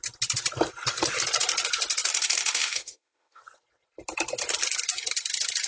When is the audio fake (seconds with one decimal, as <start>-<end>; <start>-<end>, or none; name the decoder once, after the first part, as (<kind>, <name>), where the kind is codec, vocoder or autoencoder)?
2.1-3.4 (autoencoder, DAC-VAE)